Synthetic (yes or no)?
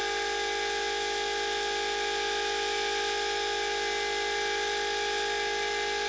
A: no